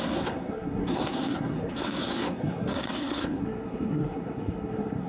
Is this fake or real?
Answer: fake